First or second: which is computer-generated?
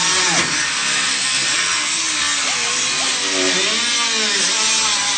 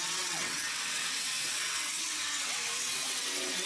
second